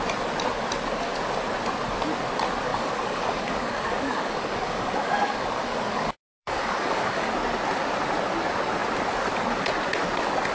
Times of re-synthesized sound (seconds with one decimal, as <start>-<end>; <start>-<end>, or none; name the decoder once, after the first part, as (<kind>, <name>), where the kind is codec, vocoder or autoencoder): 2.7-7.3 (codec, DAC)